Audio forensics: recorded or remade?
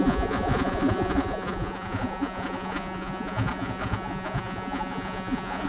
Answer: remade